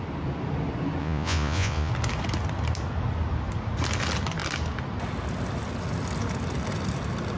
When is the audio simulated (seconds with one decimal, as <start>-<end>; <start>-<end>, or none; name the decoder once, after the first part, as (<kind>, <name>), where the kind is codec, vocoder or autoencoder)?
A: 1.0-1.9 (vocoder, Vocos)

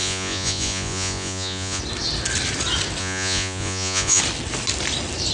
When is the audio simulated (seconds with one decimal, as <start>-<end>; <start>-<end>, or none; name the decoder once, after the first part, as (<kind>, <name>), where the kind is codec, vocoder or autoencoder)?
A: 0.0-1.8 (vocoder, Vocos); 3.0-4.2